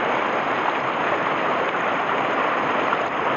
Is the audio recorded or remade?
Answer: recorded